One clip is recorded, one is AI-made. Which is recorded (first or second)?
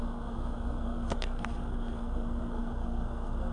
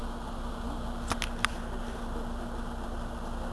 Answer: second